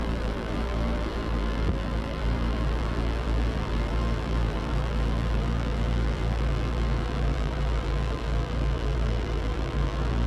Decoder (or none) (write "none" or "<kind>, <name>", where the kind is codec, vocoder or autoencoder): vocoder, BigVGAN v2